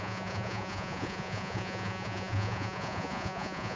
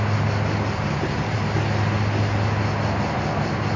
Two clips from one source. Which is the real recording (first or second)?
second